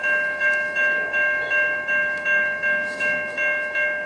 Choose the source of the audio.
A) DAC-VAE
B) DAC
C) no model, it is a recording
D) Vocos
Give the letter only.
A